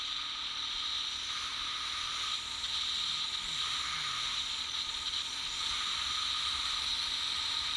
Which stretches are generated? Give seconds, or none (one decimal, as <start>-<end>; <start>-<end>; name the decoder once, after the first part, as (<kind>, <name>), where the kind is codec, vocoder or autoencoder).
none